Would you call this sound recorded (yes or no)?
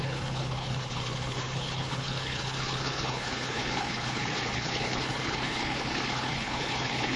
no